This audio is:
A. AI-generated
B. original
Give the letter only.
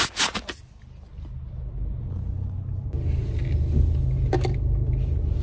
B